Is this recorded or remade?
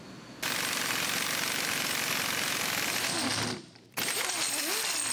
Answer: recorded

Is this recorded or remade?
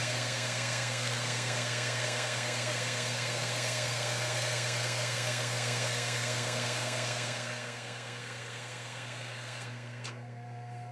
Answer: remade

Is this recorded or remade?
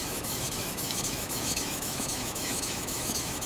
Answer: remade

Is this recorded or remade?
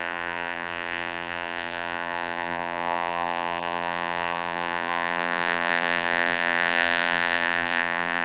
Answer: remade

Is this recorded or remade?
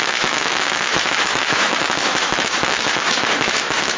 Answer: remade